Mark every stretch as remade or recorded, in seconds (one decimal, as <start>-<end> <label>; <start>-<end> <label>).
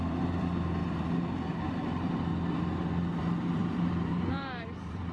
0.0-2.3 remade; 2.3-3.2 recorded; 3.2-5.1 remade